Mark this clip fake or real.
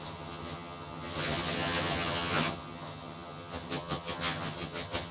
fake